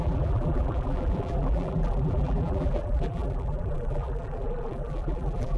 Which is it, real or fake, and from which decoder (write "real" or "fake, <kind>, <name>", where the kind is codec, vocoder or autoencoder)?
fake, vocoder, BigVGAN v2